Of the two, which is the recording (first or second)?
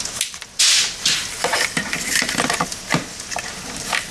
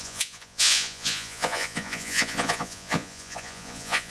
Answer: first